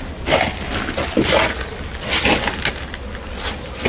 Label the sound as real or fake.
real